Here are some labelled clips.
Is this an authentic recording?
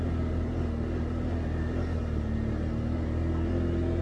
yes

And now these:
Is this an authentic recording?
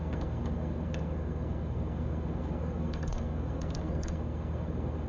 no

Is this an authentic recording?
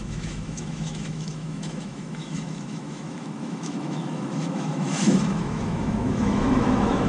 no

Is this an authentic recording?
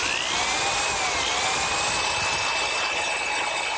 yes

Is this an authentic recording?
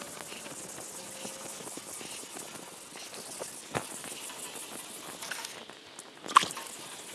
yes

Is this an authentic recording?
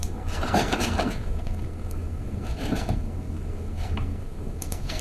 no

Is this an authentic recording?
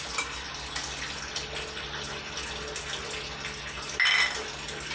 yes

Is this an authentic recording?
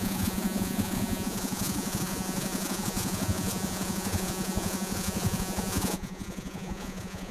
no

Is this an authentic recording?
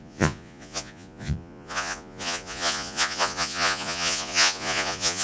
no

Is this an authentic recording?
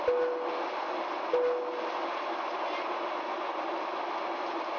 yes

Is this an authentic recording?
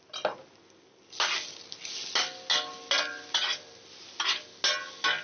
yes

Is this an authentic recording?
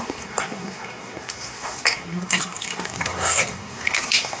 no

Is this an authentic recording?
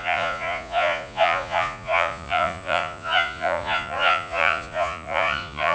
no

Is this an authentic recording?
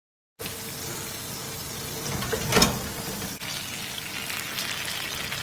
yes